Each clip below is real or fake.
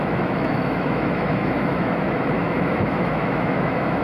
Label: fake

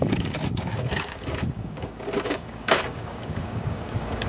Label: fake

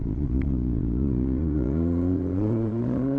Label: fake